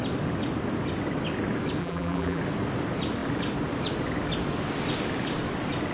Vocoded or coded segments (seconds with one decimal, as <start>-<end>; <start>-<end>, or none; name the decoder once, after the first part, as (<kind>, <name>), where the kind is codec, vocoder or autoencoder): 1.8-2.4 (vocoder, BigVGAN v2)